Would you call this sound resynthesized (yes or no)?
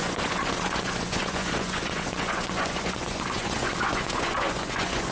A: yes